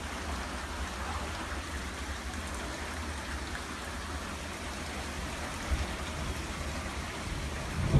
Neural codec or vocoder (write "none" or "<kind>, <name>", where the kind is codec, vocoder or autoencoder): none